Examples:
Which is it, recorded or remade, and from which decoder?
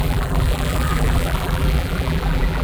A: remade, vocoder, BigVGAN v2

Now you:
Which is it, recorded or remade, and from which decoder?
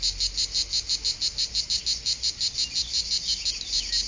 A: recorded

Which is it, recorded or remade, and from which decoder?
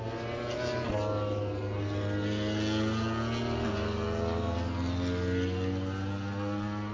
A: recorded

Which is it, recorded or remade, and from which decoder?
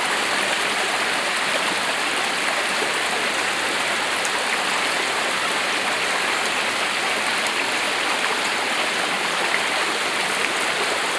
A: recorded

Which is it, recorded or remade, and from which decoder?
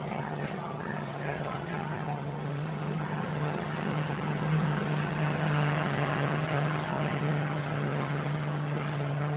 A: remade, vocoder, HiFi-GAN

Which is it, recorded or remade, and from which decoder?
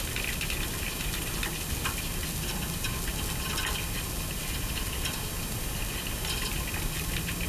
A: recorded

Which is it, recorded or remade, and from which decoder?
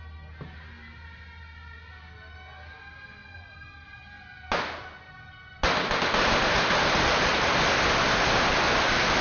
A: recorded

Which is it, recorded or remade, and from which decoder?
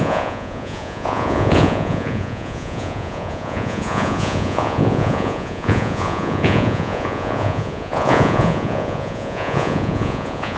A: remade, vocoder, Vocos